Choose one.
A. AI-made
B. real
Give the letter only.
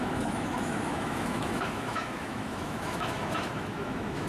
A